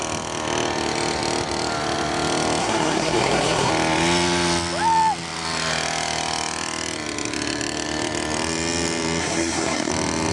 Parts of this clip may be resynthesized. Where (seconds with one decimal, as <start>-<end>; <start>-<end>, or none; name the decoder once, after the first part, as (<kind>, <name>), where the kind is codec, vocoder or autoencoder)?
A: 2.6-3.7 (codec, SNAC); 9.2-9.9

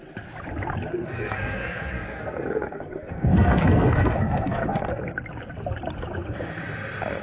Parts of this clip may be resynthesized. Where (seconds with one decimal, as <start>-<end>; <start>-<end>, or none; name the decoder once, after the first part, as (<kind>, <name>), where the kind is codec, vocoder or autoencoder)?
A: 0.9-5.0 (codec, SNAC)

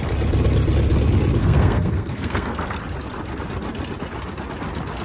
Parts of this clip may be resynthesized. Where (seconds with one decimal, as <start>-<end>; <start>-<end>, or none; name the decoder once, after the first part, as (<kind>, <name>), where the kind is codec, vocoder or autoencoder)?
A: 1.4-2.8 (codec, SNAC)

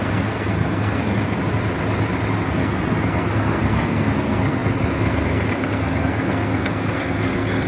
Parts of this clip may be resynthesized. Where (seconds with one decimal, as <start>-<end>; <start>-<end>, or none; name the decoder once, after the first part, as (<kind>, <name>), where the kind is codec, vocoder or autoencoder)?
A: 0.0-1.4 (codec, SNAC); 2.3-7.7

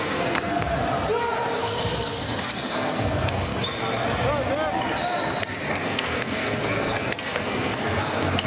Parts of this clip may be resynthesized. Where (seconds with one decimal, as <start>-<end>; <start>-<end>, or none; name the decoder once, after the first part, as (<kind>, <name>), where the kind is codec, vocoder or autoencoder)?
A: 0.0-0.8 (codec, SNAC); 1.6-3.5; 5.7-8.5

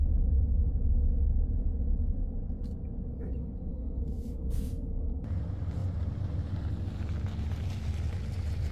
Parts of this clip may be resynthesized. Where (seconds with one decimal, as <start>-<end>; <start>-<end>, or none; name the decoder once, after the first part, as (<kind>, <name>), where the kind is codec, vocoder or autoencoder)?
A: 3.7-5.2 (codec, SNAC)